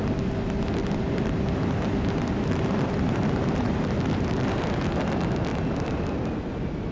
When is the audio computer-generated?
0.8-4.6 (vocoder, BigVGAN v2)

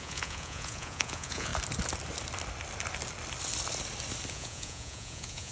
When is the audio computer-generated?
0.0-1.5 (vocoder, Vocos); 4.3-5.5

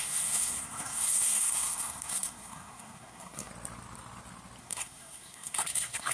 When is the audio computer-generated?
0.0-3.5 (codec, SNAC); 4.6-6.1

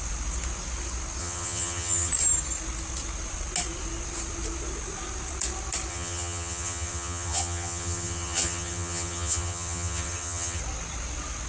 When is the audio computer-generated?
1.2-2.1 (vocoder, HiFi-GAN); 5.9-10.6

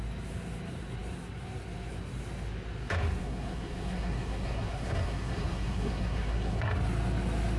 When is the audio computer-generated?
3.2-6.7 (codec, SNAC)

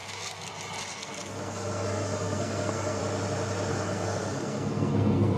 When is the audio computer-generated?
0.0-0.5 (codec, SNAC); 0.9-3.0; 3.7-5.4

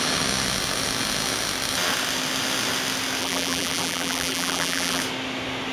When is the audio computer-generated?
3.2-5.0 (vocoder, BigVGAN v2)

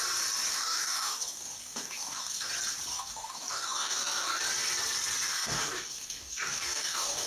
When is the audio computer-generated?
0.5-2.5 (codec, DAC); 2.9-4.4; 5.3-7.3